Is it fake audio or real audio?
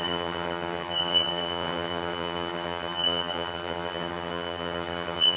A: fake